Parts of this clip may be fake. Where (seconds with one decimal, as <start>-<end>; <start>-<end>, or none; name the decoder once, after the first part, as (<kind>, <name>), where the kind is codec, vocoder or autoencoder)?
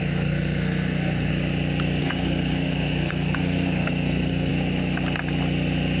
0.0-1.3 (codec, SNAC); 2.0-4.5